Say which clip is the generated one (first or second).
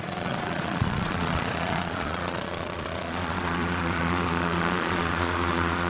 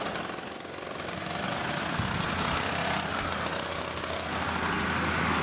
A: first